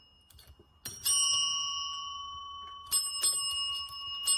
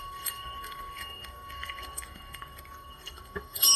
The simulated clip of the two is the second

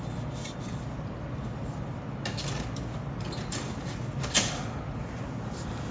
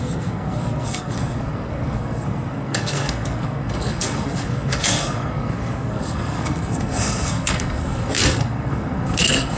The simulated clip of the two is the second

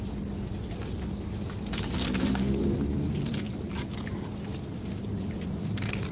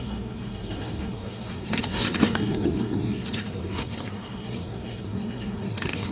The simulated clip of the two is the second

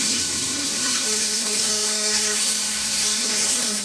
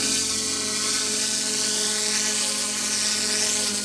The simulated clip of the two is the first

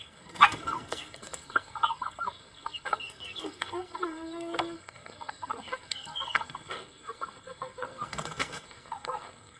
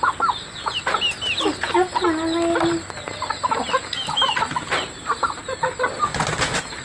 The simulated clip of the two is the first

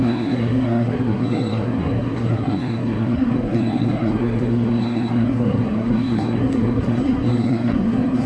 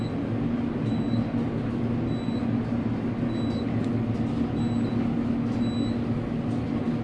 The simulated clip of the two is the first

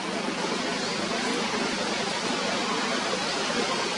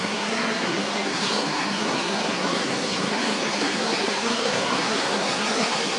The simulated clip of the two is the second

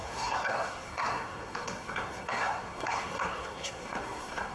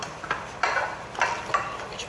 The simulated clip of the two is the first